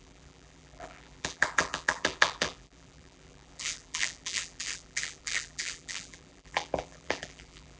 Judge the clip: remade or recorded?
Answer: remade